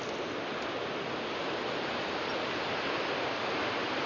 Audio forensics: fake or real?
real